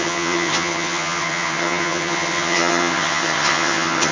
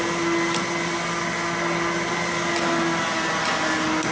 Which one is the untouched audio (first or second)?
second